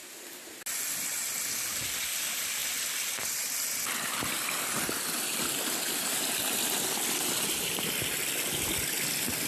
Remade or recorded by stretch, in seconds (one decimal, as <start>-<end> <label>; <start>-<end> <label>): 0.0-9.5 recorded